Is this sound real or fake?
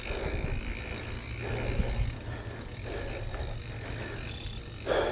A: real